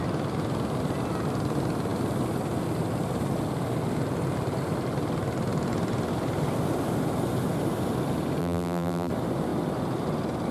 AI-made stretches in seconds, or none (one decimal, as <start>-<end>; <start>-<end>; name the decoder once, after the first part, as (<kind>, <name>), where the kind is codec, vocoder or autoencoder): 8.4-9.1 (vocoder, BigVGAN v2)